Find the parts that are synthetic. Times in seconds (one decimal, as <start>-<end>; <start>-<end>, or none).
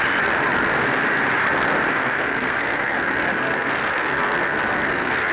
1.9-5.3